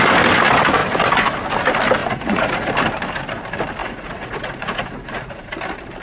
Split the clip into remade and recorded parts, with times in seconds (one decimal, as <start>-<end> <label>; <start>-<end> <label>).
0.0-2.0 recorded; 2.0-2.7 remade; 2.7-3.8 recorded; 3.8-5.5 remade; 5.5-6.0 recorded